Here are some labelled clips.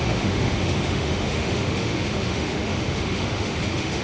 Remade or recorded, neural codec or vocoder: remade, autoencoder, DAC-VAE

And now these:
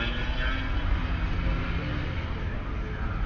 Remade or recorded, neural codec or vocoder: recorded